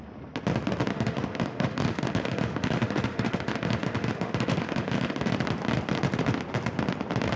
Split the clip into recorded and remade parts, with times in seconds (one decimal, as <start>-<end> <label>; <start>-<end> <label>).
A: 0.0-0.9 recorded; 0.9-5.3 remade; 5.3-7.4 recorded